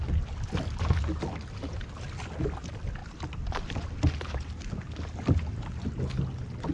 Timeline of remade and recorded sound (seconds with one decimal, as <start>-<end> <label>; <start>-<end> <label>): 0.0-6.7 recorded